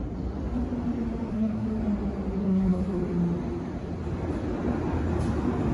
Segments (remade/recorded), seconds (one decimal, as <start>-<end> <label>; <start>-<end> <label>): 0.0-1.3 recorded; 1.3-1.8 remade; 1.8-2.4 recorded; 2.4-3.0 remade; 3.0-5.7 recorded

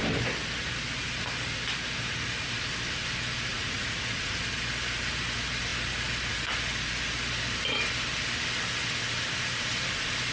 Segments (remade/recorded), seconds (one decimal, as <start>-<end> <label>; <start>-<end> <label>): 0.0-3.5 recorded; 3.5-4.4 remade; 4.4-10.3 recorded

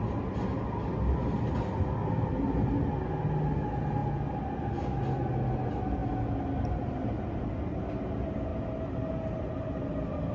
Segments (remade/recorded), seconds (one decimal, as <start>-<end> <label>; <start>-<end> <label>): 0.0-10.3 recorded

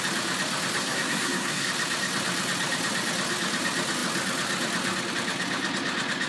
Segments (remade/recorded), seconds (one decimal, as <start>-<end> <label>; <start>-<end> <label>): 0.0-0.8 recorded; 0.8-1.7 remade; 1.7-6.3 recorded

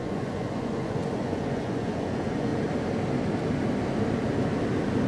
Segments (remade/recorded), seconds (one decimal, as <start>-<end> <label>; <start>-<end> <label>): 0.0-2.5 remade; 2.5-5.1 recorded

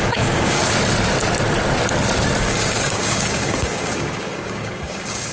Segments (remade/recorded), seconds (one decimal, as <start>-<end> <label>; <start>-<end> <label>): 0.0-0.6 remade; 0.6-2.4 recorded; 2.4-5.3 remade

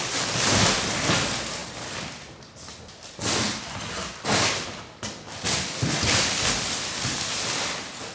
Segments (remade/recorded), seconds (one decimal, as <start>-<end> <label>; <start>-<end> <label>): 0.0-8.1 recorded